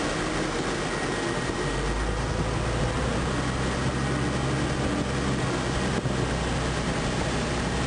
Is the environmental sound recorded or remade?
recorded